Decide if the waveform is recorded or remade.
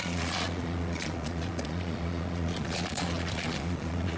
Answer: remade